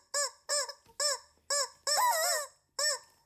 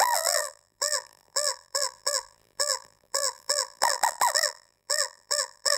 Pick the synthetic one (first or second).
second